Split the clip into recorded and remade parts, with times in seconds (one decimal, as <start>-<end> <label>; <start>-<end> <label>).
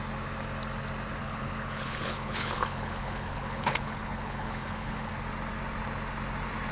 0.0-1.2 recorded; 1.2-5.1 remade; 5.1-6.7 recorded